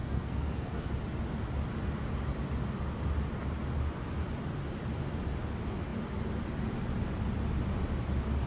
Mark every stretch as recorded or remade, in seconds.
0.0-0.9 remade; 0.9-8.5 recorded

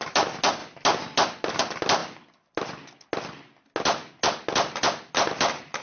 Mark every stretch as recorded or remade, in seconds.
0.0-5.8 recorded